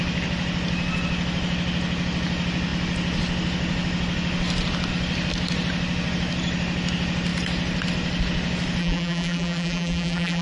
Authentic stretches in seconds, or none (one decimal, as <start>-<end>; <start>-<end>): 0.0-8.8